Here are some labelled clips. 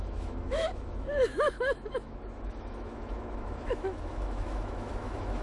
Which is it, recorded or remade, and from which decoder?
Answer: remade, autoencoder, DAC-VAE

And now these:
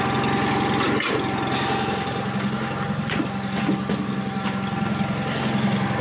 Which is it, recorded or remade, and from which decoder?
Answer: recorded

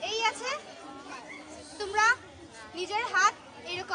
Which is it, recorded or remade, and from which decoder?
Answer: recorded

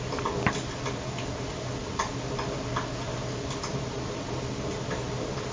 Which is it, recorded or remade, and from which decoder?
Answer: recorded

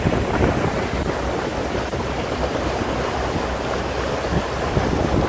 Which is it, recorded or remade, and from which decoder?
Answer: recorded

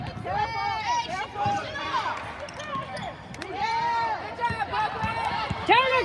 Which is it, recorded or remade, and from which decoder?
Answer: remade, vocoder, BigVGAN v2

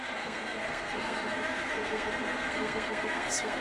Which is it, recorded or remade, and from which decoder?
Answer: remade, codec, SNAC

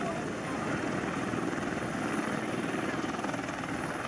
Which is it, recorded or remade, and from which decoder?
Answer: recorded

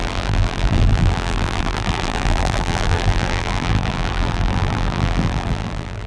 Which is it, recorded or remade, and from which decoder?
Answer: remade, vocoder, BigVGAN v2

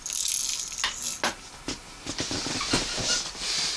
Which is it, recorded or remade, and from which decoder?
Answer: recorded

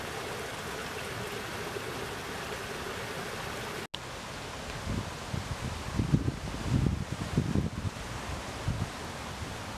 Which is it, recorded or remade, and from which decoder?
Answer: recorded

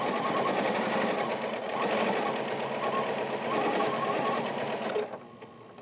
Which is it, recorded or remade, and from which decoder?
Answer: recorded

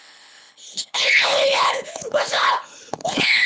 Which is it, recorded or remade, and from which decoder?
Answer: remade, codec, HILCodec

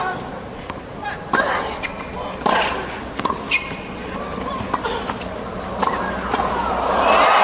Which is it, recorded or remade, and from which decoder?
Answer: recorded